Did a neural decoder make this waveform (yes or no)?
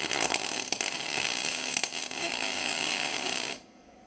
yes